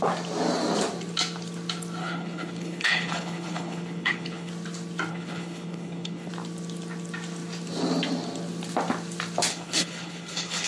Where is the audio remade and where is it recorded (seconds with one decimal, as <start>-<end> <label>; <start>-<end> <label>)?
0.0-2.0 recorded; 2.0-4.5 remade; 4.5-5.1 recorded; 5.1-6.3 remade; 6.3-9.5 recorded; 9.5-10.7 remade